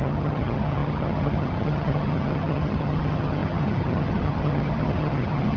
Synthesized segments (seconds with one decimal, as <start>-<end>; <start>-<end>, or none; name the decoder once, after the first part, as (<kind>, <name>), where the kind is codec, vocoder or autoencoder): 0.0-5.6 (vocoder, HiFi-GAN)